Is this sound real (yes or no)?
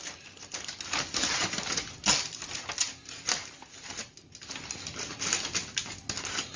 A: yes